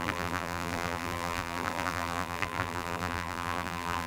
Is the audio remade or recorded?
remade